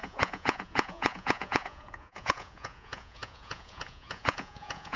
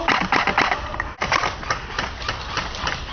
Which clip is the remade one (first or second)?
first